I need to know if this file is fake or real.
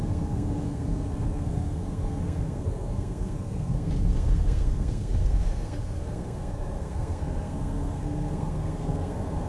fake